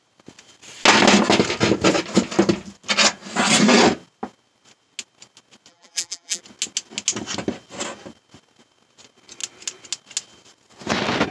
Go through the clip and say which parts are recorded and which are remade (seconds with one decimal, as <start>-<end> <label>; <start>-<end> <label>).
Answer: 0.0-5.7 recorded; 5.7-6.4 remade; 6.4-11.3 recorded

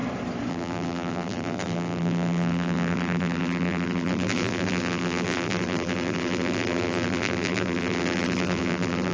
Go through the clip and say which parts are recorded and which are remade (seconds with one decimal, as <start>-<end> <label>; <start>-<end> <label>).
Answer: 0.0-0.5 recorded; 0.5-9.1 remade